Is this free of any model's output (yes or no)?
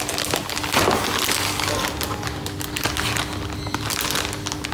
yes